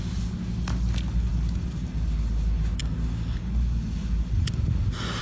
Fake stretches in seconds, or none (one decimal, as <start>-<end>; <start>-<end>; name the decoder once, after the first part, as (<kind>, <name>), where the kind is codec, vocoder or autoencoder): none